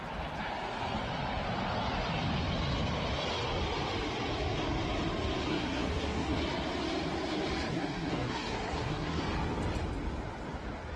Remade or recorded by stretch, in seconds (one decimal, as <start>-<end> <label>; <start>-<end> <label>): 0.0-5.5 recorded; 5.5-6.4 remade; 6.4-7.7 recorded; 7.7-9.2 remade; 9.2-11.0 recorded